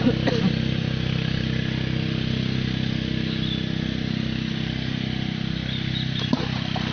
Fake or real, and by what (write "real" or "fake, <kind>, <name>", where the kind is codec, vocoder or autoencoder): real